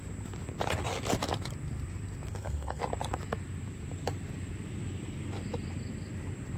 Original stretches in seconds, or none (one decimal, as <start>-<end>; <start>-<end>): 0.0-2.3; 2.8-6.6